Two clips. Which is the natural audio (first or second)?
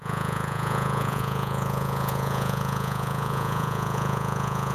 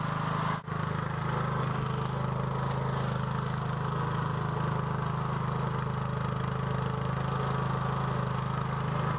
second